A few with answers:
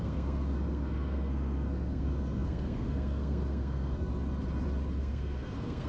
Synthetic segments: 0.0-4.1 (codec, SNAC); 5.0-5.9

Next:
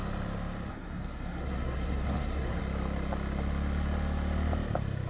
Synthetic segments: 0.7-2.6 (codec, SNAC)

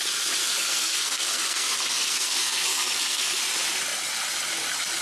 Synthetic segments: 0.4-3.4 (codec, SNAC)

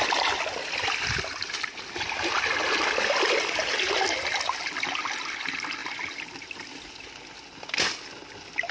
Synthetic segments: none

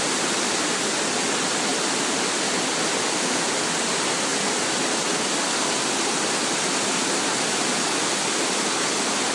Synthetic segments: none